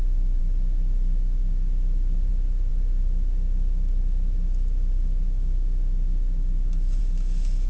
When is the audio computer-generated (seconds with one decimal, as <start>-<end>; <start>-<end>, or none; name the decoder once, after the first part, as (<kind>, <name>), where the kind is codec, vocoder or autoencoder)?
none